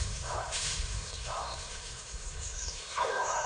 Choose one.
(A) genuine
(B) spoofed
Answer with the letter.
B